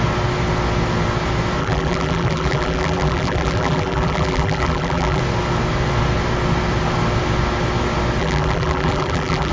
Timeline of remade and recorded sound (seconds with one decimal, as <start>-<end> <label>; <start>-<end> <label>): 0.0-1.6 recorded; 1.6-5.2 remade; 5.2-8.2 recorded; 8.2-9.5 remade